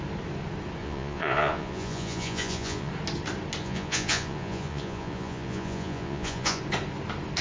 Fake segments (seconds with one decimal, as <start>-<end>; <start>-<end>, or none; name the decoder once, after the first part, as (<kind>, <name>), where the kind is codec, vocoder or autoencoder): 0.8-2.9 (vocoder, Vocos); 3.6-6.6